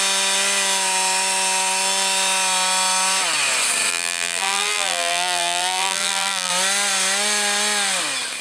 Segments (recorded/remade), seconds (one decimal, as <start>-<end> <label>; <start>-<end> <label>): 0.0-3.9 recorded; 3.9-6.5 remade; 6.5-8.4 recorded